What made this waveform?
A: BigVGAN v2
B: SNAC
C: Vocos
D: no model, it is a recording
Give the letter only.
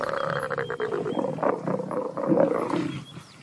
D